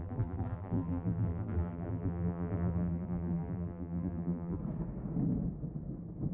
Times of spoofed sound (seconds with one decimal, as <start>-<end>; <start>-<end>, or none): 0.0-4.6